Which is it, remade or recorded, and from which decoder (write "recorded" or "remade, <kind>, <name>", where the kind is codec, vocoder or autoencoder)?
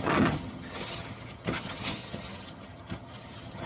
remade, vocoder, HiFi-GAN